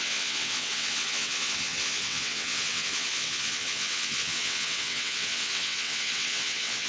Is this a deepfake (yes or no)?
yes